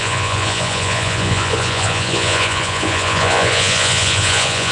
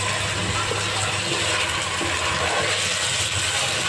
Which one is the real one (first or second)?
second